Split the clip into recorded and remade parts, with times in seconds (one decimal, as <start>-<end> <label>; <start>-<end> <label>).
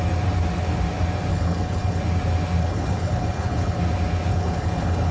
0.0-1.3 recorded; 1.3-2.0 remade; 2.0-2.6 recorded; 2.6-3.8 remade; 3.8-4.3 recorded; 4.3-5.1 remade